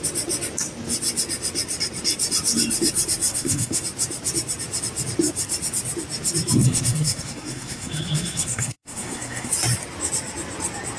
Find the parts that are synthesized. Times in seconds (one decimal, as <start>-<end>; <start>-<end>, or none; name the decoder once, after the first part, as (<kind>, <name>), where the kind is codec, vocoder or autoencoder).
3.3-3.8 (codec, SNAC); 6.6-9.5